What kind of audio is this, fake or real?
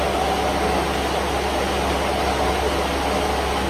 real